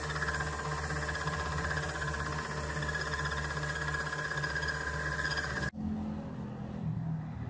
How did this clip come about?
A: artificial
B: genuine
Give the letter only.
B